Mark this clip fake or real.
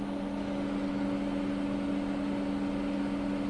real